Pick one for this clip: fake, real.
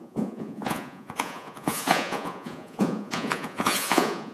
fake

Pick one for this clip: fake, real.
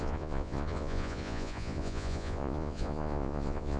fake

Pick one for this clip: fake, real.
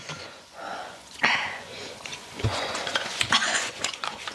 fake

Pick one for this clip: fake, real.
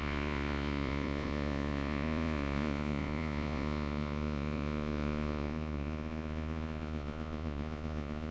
fake